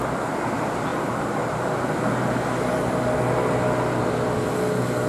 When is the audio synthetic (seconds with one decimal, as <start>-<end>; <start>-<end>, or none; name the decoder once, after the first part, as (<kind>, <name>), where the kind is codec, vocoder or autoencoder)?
none